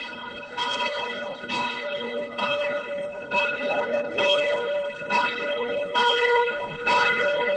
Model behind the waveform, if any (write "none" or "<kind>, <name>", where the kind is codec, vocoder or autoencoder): codec, HILCodec